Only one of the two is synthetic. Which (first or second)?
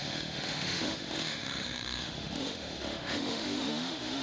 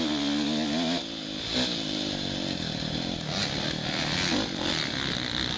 first